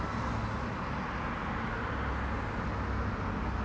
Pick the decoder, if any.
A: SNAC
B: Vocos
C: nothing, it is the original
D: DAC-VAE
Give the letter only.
C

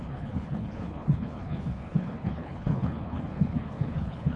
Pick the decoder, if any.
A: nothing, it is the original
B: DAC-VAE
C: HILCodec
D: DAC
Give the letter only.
C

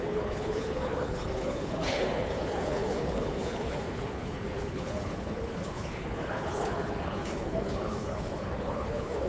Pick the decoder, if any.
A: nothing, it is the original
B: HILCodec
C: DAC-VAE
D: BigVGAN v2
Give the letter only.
B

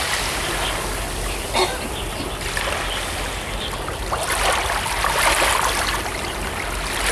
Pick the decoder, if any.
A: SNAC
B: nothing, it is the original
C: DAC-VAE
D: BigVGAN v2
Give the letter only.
B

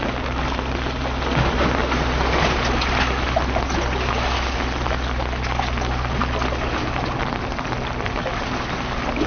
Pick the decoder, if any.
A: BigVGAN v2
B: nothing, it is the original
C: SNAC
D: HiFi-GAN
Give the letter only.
B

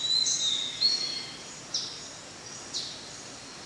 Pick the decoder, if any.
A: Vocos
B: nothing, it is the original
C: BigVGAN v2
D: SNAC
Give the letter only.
B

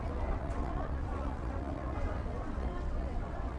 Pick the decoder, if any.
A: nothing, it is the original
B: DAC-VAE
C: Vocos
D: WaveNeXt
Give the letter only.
D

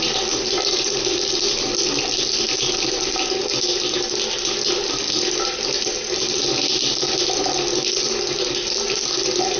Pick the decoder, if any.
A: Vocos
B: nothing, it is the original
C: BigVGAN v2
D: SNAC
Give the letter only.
B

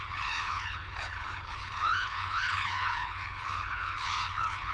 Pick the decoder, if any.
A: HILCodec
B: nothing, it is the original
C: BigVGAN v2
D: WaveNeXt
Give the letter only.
A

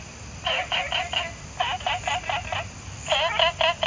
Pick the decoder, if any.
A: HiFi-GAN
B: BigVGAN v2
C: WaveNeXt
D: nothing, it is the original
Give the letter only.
D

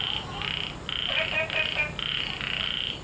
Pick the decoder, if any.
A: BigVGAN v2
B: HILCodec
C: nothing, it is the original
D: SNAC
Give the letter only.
C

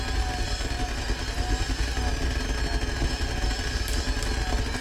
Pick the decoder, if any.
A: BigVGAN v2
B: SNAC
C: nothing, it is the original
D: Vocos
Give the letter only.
C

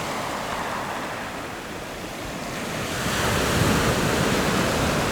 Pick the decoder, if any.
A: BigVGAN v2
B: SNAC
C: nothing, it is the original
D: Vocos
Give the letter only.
C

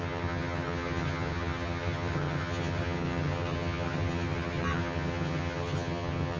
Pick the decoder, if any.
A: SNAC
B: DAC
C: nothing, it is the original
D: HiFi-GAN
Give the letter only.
D